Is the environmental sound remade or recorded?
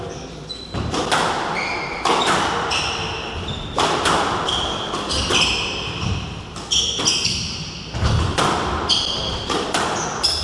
recorded